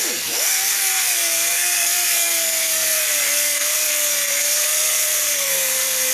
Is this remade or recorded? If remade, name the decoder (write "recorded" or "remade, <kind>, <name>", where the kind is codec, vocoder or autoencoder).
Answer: remade, codec, SNAC